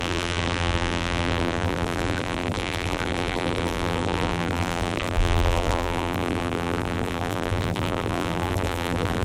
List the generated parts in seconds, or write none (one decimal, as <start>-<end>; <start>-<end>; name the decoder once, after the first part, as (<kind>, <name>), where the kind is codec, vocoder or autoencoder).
0.0-9.2 (vocoder, BigVGAN v2)